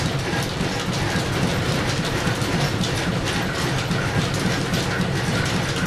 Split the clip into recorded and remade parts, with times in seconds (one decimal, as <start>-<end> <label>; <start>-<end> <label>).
0.0-1.5 recorded; 1.5-2.7 remade; 2.7-5.9 recorded